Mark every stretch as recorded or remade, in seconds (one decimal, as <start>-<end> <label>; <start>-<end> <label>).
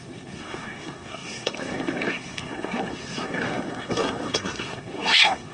0.0-5.5 remade